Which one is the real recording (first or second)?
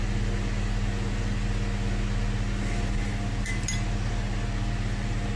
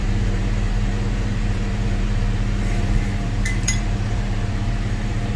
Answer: first